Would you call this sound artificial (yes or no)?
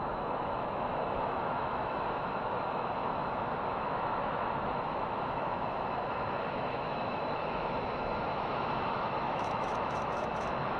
yes